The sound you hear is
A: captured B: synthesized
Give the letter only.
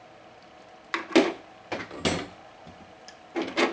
A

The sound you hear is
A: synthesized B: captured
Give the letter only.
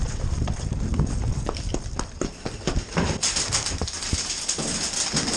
A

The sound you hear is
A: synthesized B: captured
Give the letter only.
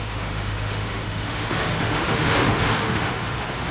A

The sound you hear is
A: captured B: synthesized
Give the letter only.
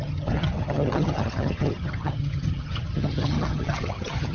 B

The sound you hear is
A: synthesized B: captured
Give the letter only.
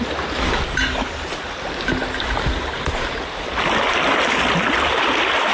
B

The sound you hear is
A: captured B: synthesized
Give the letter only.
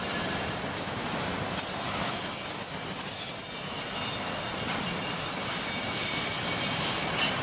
B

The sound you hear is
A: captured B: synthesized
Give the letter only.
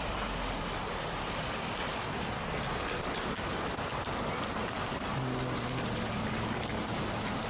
A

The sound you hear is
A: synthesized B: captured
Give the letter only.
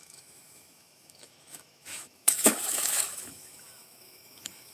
A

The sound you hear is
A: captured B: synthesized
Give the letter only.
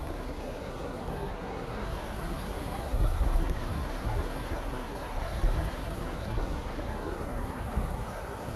B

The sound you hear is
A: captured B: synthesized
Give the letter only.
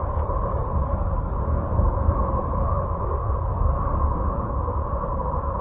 A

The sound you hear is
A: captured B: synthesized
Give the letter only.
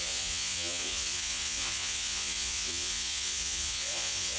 B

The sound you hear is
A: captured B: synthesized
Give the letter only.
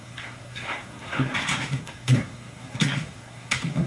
B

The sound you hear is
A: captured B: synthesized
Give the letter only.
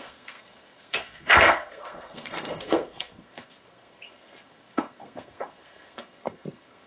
B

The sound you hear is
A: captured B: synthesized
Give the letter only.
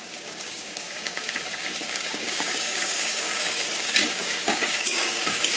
B